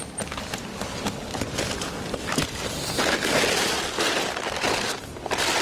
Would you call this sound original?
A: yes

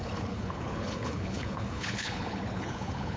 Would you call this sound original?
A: no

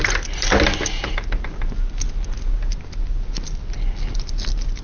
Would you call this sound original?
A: yes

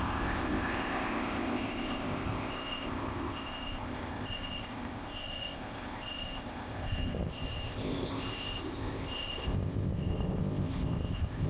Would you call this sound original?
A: no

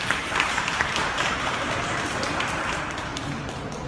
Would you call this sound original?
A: no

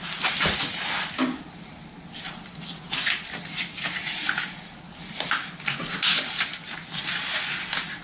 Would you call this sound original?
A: yes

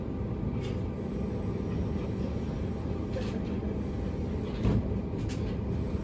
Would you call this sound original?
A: yes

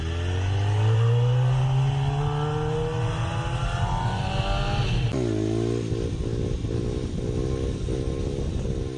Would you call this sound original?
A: yes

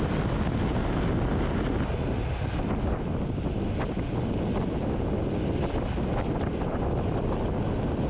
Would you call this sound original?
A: yes